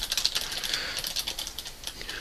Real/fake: real